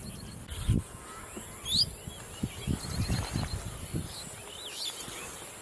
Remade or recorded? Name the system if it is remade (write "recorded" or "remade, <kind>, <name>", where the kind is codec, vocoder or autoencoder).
recorded